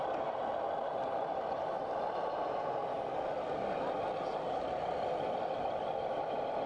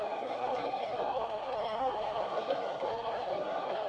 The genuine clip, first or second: first